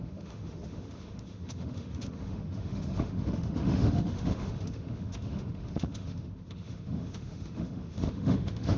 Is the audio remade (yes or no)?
yes